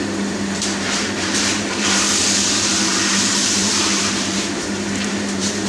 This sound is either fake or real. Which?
fake